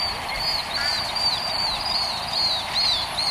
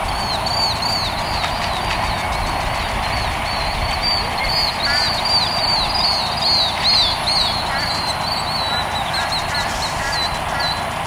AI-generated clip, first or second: first